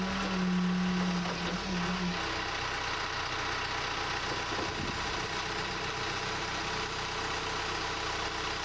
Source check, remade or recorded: recorded